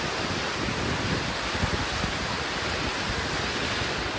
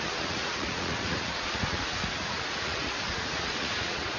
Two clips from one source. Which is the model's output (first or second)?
second